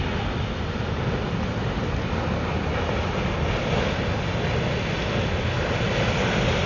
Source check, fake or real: real